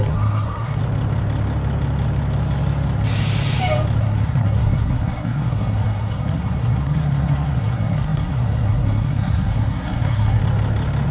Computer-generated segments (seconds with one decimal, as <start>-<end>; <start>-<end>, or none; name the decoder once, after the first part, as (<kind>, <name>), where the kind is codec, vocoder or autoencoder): 0.0-0.8 (codec, SNAC); 4.0-10.4